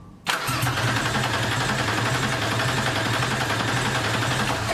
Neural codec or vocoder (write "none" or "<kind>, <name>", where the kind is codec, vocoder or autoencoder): none